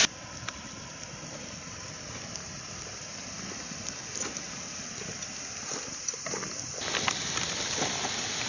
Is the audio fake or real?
fake